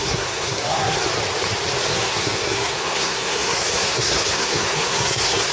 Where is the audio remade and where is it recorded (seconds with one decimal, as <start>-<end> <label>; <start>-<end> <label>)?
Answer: 0.0-0.9 remade; 0.9-1.9 recorded; 1.9-5.5 remade